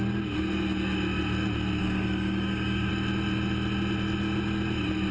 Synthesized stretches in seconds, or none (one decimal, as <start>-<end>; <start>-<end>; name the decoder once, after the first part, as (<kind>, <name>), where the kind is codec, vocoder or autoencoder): 1.8-2.9 (codec, DAC)